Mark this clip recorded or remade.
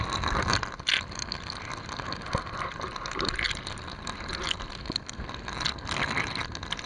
recorded